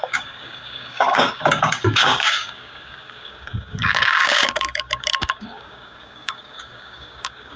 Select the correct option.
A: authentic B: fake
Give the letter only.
B